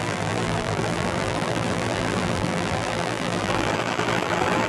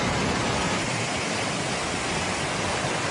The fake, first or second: first